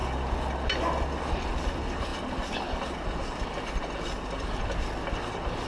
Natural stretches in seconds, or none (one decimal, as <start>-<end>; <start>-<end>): 0.0-5.7